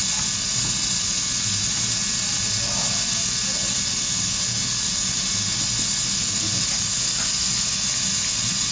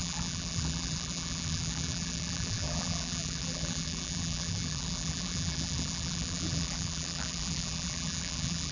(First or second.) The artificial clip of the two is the second